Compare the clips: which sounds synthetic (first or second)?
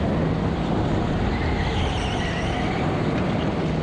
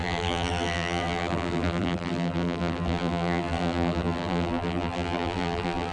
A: second